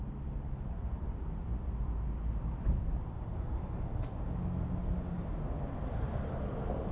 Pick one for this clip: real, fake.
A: real